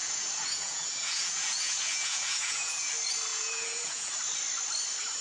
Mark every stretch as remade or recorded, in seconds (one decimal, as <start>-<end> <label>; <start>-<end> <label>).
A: 0.0-2.9 remade; 2.9-3.3 recorded; 3.3-4.1 remade; 4.1-5.2 recorded